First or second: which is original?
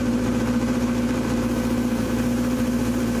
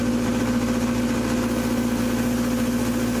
second